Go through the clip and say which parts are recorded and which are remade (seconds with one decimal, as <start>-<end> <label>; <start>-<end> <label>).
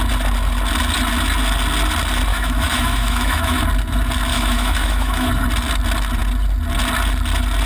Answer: 0.0-2.3 recorded; 2.3-3.6 remade; 3.6-4.3 recorded; 4.3-5.3 remade; 5.3-7.7 recorded